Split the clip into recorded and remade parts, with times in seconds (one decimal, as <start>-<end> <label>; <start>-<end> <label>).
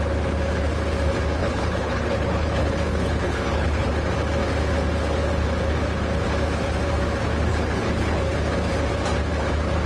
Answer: 0.0-1.4 recorded; 1.4-3.9 remade; 3.9-7.5 recorded; 7.5-8.2 remade; 8.2-9.9 recorded